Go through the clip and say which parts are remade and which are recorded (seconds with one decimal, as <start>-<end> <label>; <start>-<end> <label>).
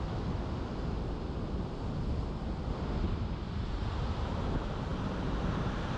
0.0-3.0 recorded; 3.0-4.4 remade; 4.4-4.9 recorded; 4.9-6.0 remade